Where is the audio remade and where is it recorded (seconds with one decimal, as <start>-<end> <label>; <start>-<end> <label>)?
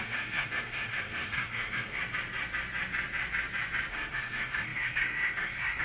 0.0-2.0 remade; 2.0-3.9 recorded; 3.9-5.8 remade